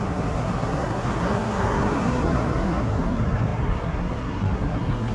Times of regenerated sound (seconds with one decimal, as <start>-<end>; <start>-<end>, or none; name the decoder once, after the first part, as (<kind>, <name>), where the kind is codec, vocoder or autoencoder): 0.0-5.1 (codec, SNAC)